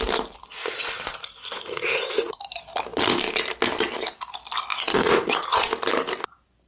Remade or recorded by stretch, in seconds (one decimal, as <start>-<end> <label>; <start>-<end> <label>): 0.0-0.6 recorded; 0.6-2.4 remade; 2.4-4.7 recorded; 4.7-5.8 remade; 5.8-6.7 recorded